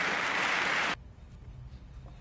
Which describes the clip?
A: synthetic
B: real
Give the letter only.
B